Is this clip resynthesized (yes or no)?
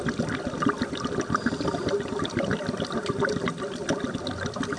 no